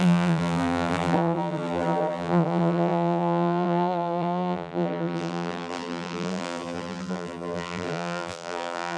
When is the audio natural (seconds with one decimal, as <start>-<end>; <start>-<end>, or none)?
none

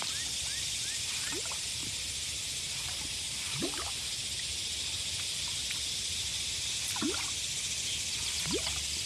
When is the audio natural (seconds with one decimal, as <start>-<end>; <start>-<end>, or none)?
0.0-1.8; 3.8-9.1

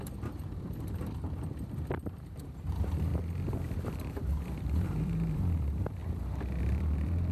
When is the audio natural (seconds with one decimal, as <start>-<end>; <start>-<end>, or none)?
3.1-4.1; 6.0-6.6

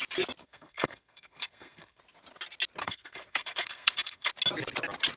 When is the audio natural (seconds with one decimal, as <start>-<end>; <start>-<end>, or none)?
0.0-0.4; 2.0-2.8; 4.3-5.2

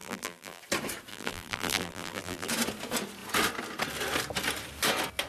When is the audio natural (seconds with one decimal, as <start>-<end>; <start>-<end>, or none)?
0.6-1.1; 2.5-5.3

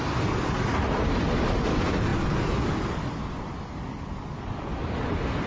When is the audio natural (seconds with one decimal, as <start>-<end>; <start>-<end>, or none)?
0.0-5.5

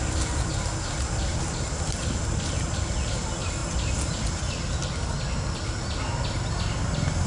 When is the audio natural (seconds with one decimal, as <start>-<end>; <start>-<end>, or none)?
0.0-7.3

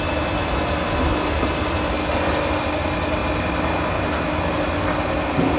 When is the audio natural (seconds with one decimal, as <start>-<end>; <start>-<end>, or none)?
0.0-5.6